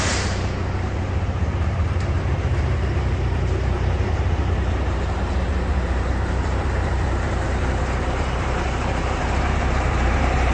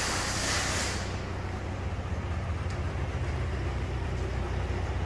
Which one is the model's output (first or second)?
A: first